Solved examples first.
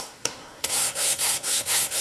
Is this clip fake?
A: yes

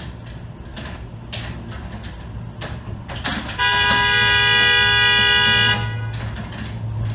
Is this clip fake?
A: no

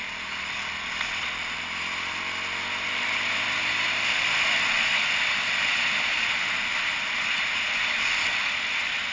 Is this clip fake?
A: no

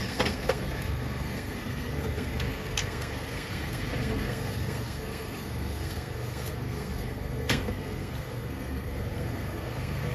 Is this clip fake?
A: yes